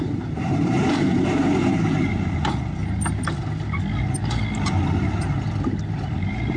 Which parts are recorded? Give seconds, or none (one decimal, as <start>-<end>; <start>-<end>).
2.8-5.8